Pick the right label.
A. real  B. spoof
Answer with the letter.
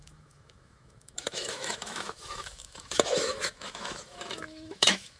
B